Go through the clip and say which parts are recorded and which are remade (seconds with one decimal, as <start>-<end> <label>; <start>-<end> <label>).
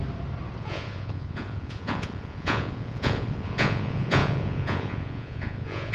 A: 0.0-0.6 recorded; 0.6-5.9 remade